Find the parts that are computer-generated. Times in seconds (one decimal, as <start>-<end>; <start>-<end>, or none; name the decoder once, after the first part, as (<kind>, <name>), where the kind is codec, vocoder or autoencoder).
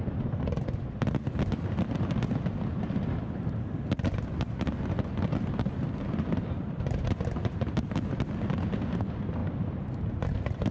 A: none